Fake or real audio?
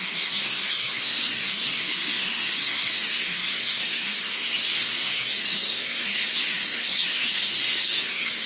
fake